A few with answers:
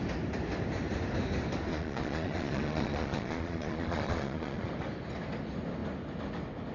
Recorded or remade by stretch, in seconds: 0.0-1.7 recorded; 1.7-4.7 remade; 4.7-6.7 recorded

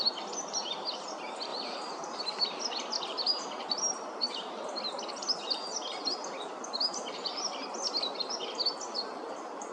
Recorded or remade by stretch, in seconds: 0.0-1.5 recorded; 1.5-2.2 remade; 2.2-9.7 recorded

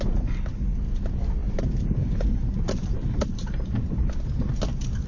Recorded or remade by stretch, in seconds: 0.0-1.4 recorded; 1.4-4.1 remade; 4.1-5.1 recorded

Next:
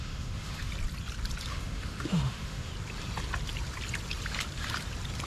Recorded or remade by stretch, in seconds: 0.0-0.7 remade; 0.7-1.5 recorded; 1.5-2.7 remade; 2.7-5.3 recorded

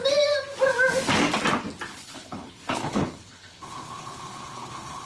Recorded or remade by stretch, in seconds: 0.0-1.9 recorded; 1.9-5.1 remade

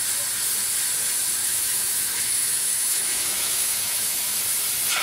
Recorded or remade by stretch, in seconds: 0.0-1.4 recorded; 1.4-4.4 remade; 4.4-5.0 recorded

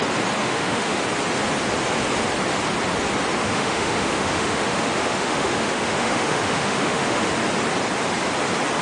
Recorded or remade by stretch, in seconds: 0.0-0.4 recorded; 0.4-1.0 remade; 1.0-3.4 recorded; 3.4-7.3 remade; 7.3-8.8 recorded

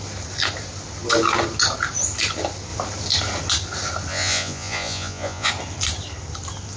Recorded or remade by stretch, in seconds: 0.0-4.1 recorded; 4.1-5.5 remade; 5.5-6.8 recorded